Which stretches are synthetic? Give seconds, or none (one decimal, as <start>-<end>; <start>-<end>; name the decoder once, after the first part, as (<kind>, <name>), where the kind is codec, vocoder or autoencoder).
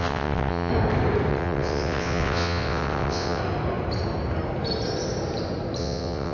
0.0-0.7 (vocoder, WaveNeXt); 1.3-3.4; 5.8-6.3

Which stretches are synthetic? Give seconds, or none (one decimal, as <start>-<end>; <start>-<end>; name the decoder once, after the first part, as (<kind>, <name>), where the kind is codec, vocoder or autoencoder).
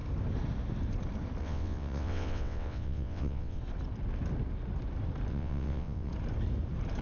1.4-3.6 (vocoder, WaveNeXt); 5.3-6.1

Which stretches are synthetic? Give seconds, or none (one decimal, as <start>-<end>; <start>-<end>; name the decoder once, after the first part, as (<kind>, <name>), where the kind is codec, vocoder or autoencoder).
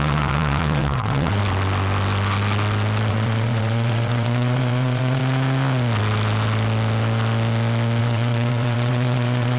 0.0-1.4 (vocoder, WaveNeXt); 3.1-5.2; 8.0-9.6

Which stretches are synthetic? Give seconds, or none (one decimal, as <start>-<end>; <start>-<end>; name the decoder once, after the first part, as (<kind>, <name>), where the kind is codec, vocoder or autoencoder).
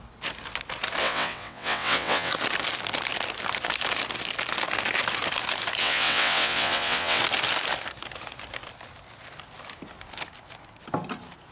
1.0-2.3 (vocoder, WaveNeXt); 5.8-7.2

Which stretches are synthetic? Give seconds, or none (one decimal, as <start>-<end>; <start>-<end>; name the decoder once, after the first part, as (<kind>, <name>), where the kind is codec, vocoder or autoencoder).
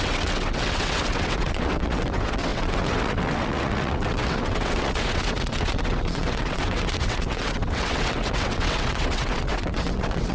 0.0-10.3 (vocoder, WaveNeXt)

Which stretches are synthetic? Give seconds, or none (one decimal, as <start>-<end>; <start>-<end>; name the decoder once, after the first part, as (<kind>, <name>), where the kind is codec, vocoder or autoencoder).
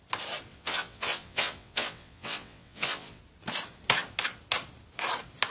0.5-3.2 (vocoder, WaveNeXt)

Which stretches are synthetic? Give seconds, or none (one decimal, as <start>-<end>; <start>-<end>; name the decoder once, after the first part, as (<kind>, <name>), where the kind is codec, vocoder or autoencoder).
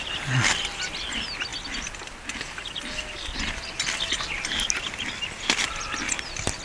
none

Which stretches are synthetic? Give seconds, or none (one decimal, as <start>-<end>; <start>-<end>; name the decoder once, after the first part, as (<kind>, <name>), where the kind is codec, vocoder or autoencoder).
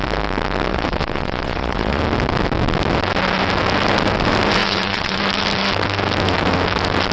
0.7-2.0 (vocoder, WaveNeXt); 4.6-5.2